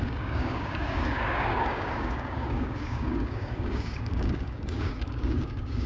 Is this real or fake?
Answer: fake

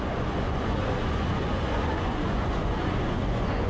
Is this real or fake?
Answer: fake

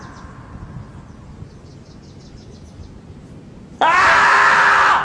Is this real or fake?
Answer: real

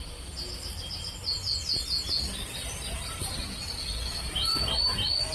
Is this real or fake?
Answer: real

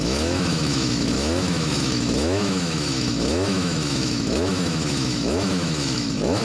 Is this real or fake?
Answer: fake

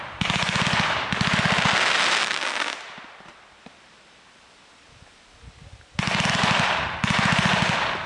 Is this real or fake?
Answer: real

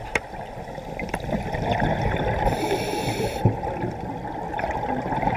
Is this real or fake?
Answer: fake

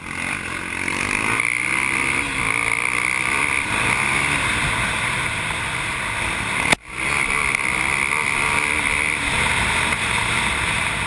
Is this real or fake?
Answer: real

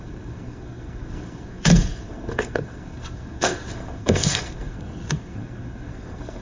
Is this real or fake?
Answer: fake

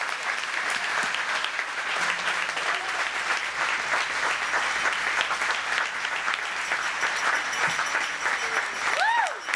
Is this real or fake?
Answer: real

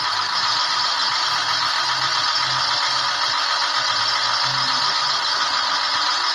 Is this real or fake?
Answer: real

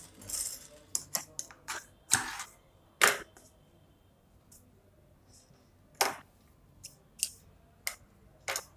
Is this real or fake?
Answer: real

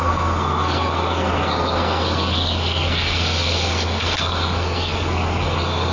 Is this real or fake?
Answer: fake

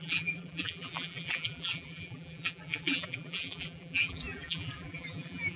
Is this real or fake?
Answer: fake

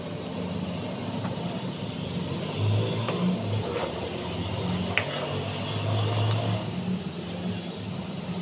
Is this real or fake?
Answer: real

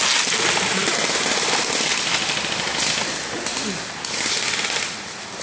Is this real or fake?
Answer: real